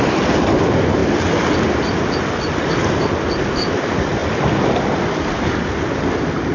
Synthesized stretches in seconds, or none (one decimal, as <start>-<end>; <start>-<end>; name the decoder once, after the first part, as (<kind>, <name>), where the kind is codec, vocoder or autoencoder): none

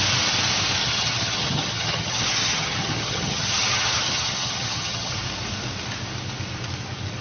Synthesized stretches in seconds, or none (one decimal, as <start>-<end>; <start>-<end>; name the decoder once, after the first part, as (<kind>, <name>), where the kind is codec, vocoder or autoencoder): 0.8-5.1 (vocoder, HiFi-GAN)

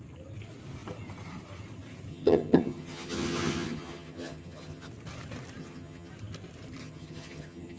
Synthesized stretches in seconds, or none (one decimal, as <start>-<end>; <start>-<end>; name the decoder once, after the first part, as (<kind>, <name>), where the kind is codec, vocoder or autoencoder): 2.1-4.9 (vocoder, HiFi-GAN); 5.6-6.1; 6.8-7.8

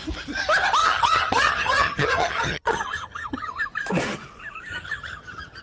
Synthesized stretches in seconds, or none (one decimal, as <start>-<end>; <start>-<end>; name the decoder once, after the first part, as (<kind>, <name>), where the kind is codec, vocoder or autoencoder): 0.8-3.6 (vocoder, HiFi-GAN); 4.7-5.6

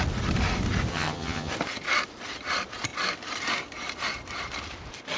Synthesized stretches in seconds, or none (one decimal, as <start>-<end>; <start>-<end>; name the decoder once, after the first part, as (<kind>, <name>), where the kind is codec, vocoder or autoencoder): 0.9-1.5 (vocoder, HiFi-GAN)

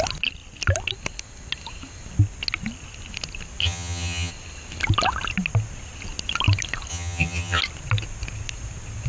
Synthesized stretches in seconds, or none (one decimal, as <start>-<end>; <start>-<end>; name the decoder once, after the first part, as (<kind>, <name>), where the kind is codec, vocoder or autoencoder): 3.6-4.3 (vocoder, HiFi-GAN); 6.9-7.6

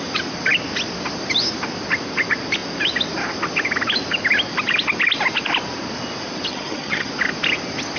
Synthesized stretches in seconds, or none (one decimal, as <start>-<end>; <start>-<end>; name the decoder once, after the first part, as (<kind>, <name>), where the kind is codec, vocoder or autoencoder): 6.5-7.1 (vocoder, HiFi-GAN)

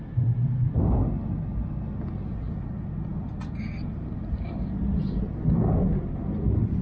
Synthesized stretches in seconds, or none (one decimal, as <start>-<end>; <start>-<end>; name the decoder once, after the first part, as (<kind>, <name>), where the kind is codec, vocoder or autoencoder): none